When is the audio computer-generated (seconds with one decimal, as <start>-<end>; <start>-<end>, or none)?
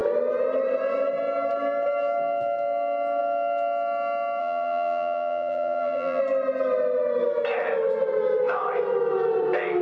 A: 4.4-6.2